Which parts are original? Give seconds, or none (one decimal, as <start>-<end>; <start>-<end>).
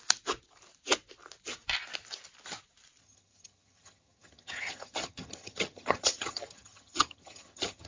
0.0-3.0